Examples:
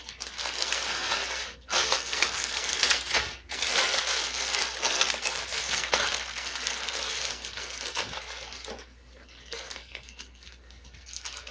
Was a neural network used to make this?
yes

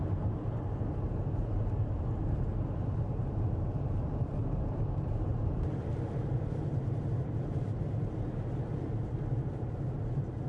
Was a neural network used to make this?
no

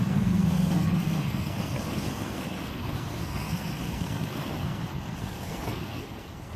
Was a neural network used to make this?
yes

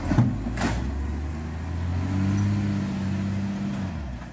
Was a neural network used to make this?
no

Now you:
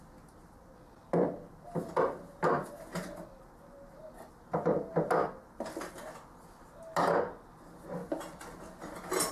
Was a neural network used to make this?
no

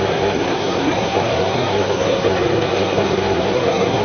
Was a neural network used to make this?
yes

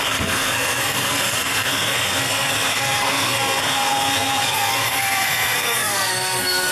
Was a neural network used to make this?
yes